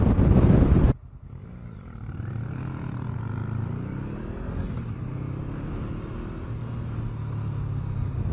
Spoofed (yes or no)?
no